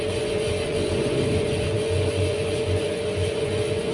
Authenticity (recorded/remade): remade